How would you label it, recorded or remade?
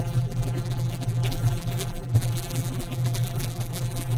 remade